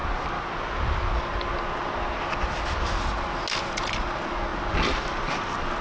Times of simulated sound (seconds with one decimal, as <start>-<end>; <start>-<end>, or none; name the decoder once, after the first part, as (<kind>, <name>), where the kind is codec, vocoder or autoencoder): none